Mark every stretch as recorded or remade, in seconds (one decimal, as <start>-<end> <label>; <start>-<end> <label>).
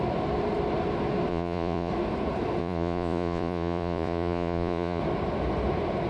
0.0-1.3 recorded; 1.3-1.9 remade; 1.9-2.6 recorded; 2.6-5.0 remade; 5.0-6.1 recorded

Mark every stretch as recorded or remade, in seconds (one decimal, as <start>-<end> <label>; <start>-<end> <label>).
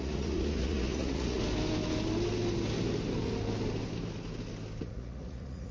0.0-1.4 remade; 1.4-4.8 recorded; 4.8-5.7 remade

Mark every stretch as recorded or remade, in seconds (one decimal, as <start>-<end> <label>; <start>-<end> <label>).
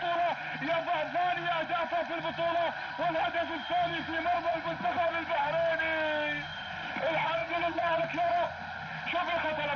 0.0-4.5 recorded; 4.5-5.1 remade; 5.1-7.4 recorded; 7.4-8.0 remade; 8.0-9.8 recorded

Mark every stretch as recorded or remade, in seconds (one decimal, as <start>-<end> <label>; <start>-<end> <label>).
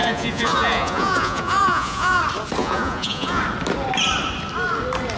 0.0-2.2 remade; 2.2-2.6 recorded; 2.6-3.4 remade; 3.4-5.2 recorded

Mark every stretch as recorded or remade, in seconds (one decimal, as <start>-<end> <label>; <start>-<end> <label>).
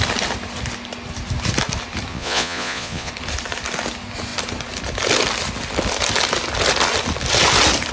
0.0-2.1 recorded; 2.1-3.1 remade; 3.1-7.9 recorded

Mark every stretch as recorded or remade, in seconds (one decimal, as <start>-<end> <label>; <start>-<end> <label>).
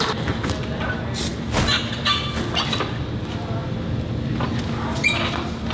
0.0-5.7 recorded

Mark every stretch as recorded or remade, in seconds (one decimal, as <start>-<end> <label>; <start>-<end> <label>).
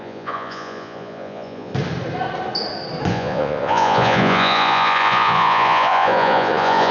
0.0-1.7 remade; 1.7-3.1 recorded; 3.1-6.9 remade